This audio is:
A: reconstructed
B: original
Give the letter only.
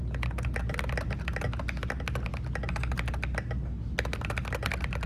B